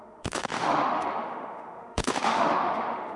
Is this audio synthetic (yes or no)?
yes